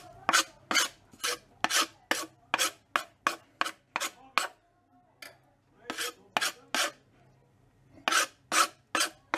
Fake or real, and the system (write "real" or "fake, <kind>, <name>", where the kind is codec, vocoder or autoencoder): real